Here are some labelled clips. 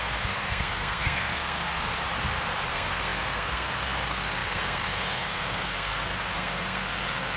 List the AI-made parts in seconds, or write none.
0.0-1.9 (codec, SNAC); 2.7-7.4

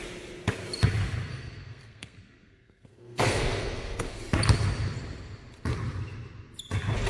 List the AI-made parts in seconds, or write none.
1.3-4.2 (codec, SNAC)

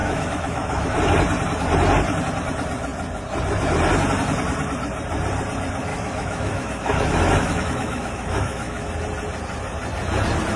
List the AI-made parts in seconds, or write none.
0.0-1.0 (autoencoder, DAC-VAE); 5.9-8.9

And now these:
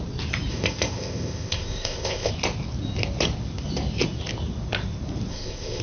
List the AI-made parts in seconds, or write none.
0.5-2.3 (codec, ZipCodec); 5.3-5.8

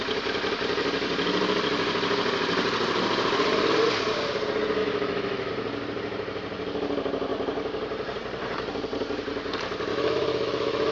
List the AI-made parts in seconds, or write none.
4.8-5.5 (autoencoder, DAC-VAE); 9.9-10.9

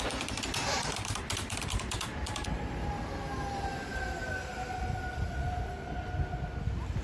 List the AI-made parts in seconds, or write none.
none